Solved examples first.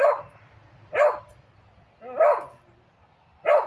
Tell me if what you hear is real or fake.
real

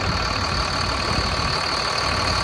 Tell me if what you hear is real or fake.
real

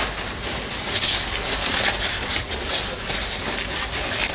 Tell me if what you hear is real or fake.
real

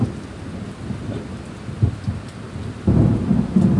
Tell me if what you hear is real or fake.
real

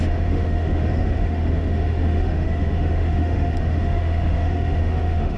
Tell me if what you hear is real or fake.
fake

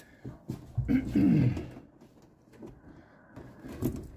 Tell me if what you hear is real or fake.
real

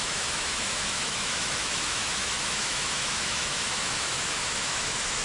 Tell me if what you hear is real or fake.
fake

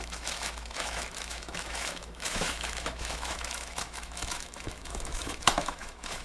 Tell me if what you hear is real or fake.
fake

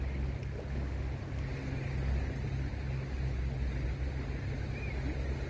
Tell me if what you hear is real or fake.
real